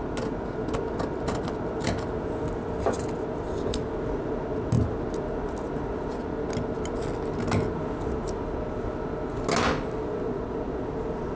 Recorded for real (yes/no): yes